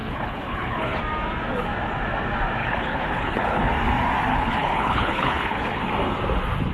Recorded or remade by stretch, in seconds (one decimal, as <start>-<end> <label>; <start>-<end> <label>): 0.0-1.0 remade; 1.0-2.6 recorded; 2.6-3.7 remade; 3.7-4.3 recorded; 4.3-5.8 remade; 5.8-6.7 recorded